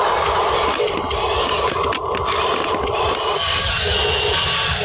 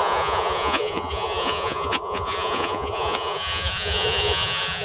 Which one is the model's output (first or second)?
second